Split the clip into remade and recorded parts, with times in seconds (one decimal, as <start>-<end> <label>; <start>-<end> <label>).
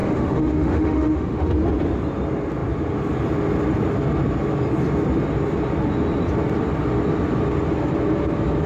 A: 0.0-1.5 remade; 1.5-8.7 recorded